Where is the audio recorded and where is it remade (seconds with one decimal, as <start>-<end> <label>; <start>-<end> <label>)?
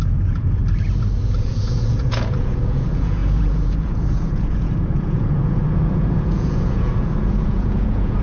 0.0-0.6 remade; 0.6-1.5 recorded; 1.5-8.2 remade